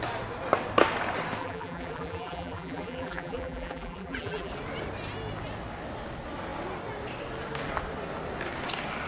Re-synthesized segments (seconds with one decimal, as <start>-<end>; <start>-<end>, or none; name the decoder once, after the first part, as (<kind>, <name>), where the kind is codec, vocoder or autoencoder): 1.4-4.5 (vocoder, BigVGAN v2)